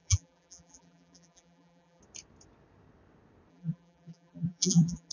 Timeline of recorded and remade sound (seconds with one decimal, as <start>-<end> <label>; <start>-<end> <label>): 0.0-2.0 remade; 2.0-3.5 recorded; 3.5-5.1 remade